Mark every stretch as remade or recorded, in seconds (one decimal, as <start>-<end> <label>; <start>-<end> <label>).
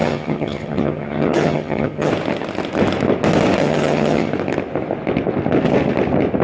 0.0-2.1 remade; 2.1-3.6 recorded; 3.6-4.3 remade; 4.3-6.4 recorded